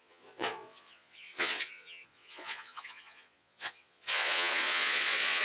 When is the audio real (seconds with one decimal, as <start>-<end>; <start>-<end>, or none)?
none